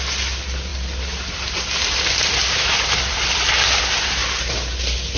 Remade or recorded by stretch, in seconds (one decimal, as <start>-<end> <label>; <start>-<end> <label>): 0.0-5.2 recorded